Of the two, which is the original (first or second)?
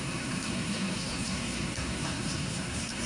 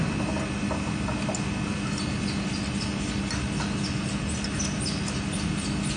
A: second